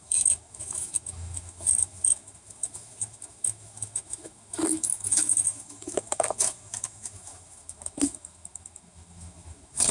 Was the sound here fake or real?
fake